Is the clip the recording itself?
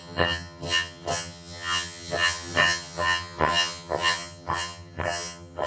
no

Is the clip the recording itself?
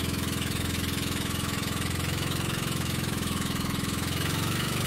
no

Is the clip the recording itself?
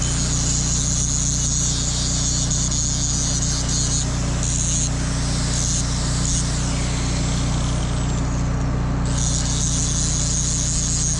yes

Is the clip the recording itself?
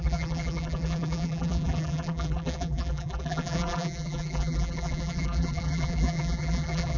no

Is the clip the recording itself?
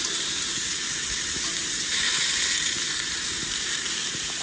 no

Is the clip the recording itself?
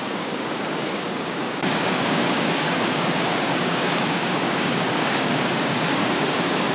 no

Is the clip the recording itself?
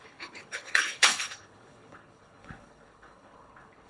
no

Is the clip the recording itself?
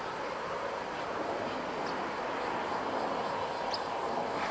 yes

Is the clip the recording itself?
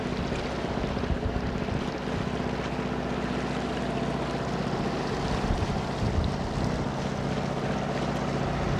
yes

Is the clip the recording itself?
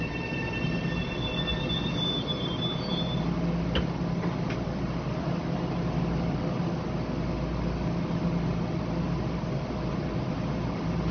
yes